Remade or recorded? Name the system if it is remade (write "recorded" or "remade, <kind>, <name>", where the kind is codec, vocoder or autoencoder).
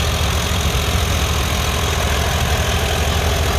recorded